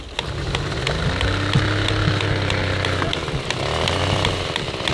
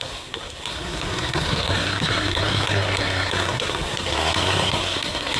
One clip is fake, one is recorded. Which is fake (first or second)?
second